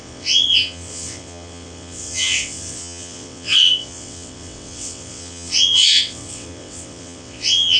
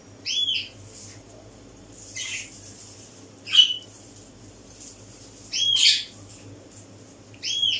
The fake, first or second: first